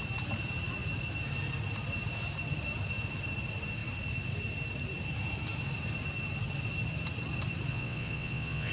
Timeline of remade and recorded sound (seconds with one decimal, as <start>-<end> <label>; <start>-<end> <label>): 0.0-7.7 recorded; 7.7-8.7 remade